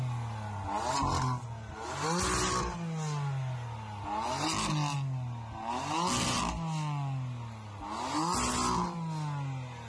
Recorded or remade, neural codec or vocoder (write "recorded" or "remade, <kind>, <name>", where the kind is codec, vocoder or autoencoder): recorded